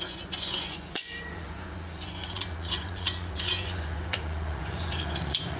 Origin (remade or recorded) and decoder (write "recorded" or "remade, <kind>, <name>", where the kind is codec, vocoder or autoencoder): remade, vocoder, Vocos